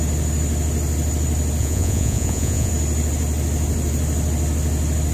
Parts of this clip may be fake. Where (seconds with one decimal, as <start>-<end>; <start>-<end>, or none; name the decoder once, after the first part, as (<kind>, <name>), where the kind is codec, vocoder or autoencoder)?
1.6-2.7 (vocoder, Vocos)

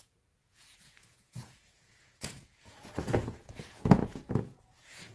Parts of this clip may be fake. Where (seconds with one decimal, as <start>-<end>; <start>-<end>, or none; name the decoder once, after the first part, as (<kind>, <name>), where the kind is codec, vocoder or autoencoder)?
0.0-5.1 (vocoder, Vocos)

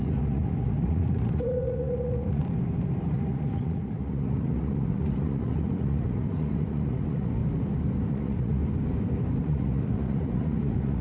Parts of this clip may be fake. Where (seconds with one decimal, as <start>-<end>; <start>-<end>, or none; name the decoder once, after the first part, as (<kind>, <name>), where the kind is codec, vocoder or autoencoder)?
0.0-2.4 (vocoder, Vocos); 3.1-7.4; 8.1-8.6; 9.4-11.0

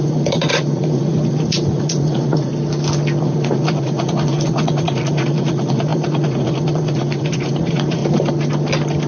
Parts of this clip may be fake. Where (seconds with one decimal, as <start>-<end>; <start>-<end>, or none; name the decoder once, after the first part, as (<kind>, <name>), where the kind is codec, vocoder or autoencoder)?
0.0-2.5 (vocoder, Vocos); 3.2-8.0

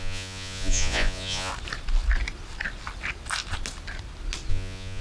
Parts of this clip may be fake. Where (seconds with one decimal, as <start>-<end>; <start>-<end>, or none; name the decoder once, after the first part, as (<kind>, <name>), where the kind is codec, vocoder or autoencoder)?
0.0-1.5 (vocoder, Vocos); 4.5-5.0

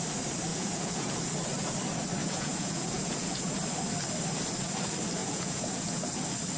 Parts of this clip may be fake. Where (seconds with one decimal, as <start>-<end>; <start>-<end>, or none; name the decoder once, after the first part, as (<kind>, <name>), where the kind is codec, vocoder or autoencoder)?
0.5-1.2 (vocoder, Vocos); 2.2-3.5; 5.2-6.0